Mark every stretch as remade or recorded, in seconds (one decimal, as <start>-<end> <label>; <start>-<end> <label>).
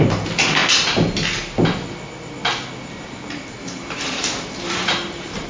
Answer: 0.0-0.6 remade; 0.6-3.5 recorded; 3.5-5.5 remade